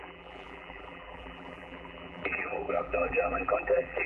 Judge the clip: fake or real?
fake